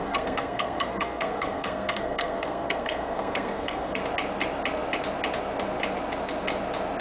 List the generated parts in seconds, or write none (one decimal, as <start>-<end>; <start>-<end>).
0.0-4.0

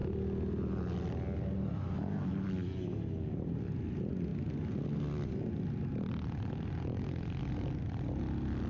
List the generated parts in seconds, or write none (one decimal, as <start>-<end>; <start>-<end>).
none

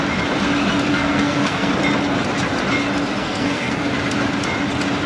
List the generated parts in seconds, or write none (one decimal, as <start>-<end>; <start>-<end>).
0.9-1.7; 3.2-3.9

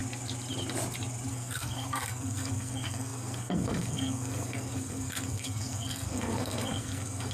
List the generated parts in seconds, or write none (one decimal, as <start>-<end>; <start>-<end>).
1.3-7.3

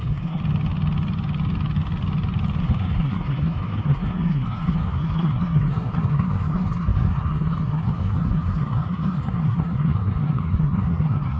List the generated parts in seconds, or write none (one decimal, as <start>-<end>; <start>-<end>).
0.0-0.4; 2.6-11.4

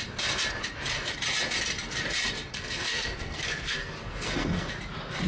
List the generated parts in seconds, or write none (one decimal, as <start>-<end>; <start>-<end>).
2.5-4.7

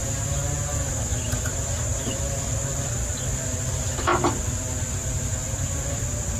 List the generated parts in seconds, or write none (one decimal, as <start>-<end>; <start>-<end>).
4.1-6.4

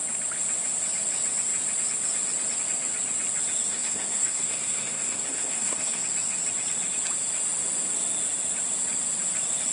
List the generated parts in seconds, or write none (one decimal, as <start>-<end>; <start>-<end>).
3.7-6.0